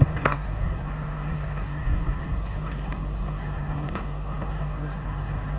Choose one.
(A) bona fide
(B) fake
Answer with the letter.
B